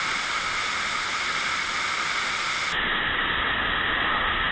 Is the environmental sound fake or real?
real